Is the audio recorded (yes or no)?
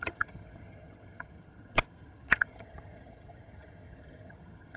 no